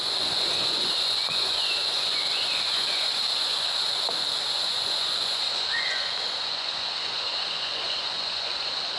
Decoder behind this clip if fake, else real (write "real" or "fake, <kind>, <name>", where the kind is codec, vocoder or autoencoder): fake, vocoder, Vocos